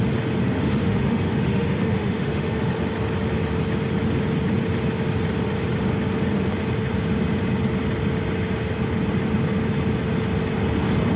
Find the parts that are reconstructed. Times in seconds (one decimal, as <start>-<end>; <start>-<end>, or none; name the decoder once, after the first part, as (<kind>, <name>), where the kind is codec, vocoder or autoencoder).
0.4-2.7 (autoencoder, DAC-VAE)